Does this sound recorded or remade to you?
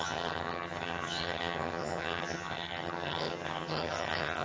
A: remade